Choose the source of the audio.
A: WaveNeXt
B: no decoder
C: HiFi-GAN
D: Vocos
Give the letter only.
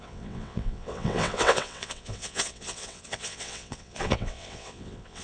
A